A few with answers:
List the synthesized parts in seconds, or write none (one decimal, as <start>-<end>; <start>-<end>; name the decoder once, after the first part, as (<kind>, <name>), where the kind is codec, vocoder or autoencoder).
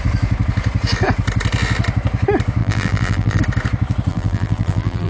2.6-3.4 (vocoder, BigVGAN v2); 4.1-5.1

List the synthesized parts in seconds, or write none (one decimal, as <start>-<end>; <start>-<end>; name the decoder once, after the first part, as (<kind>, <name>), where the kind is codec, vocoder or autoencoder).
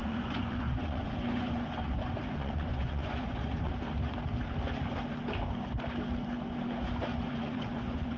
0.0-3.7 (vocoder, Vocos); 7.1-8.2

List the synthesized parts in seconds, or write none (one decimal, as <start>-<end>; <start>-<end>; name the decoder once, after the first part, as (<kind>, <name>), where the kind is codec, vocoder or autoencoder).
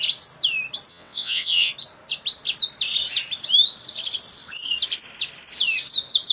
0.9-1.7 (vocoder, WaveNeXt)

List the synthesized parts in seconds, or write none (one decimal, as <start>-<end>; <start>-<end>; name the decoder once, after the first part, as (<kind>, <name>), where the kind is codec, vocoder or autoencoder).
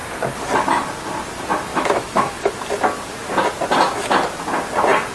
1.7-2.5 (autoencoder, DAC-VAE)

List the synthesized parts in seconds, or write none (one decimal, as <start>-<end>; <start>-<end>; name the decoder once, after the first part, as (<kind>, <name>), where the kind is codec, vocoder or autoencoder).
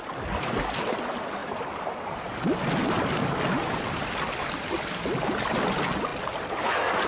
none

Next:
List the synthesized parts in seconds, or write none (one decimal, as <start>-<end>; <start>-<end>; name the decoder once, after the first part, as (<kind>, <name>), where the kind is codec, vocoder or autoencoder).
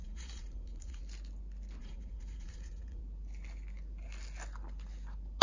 0.0-1.0 (vocoder, Vocos); 1.8-3.0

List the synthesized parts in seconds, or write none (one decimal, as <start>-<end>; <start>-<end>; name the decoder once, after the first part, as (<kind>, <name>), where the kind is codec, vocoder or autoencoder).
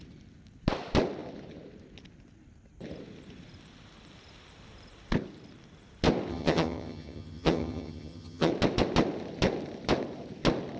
6.3-8.5 (vocoder, HiFi-GAN)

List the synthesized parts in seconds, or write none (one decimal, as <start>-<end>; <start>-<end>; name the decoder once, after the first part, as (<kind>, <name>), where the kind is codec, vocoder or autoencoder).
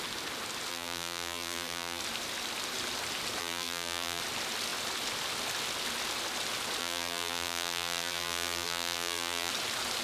0.7-2.0 (vocoder, BigVGAN v2); 3.4-4.2; 6.8-9.5